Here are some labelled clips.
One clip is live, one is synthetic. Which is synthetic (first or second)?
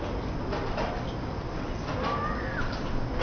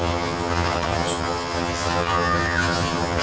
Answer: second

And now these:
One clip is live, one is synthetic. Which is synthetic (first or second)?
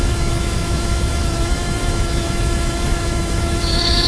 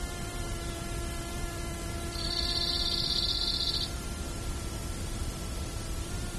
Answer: first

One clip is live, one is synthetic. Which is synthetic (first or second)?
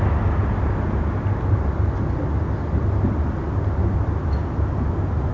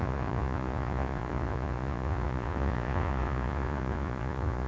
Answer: second